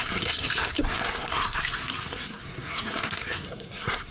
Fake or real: fake